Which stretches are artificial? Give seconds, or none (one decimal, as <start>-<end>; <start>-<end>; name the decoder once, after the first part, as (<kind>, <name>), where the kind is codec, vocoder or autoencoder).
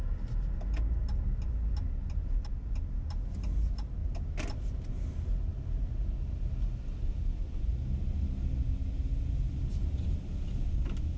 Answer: none